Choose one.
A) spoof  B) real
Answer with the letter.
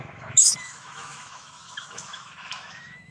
A